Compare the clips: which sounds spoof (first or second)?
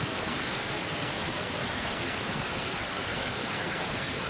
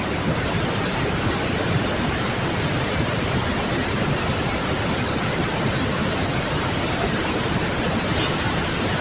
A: first